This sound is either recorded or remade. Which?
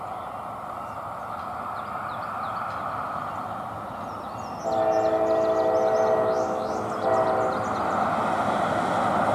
recorded